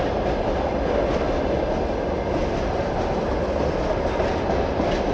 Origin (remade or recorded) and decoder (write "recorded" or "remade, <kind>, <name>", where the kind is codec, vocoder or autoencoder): recorded